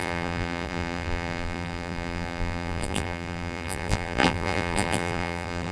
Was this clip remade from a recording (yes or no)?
yes